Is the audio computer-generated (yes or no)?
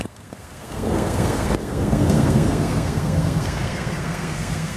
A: yes